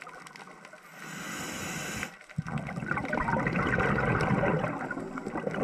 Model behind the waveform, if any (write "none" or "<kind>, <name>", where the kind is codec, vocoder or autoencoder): none